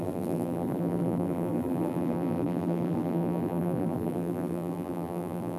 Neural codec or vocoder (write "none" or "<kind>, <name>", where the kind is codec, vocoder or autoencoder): vocoder, BigVGAN v2